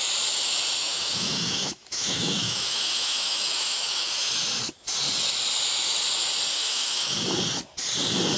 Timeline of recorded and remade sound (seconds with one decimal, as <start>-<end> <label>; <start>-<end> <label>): 0.0-0.8 recorded; 0.8-4.3 remade; 4.3-6.5 recorded; 6.5-7.1 remade; 7.1-8.4 recorded